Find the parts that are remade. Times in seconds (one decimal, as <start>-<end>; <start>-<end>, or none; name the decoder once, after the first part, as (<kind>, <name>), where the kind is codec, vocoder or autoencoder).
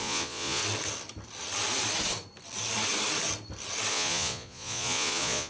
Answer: 0.0-0.6 (vocoder, Vocos); 3.9-5.5